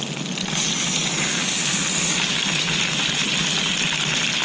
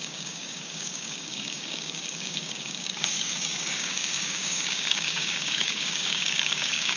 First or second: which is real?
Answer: first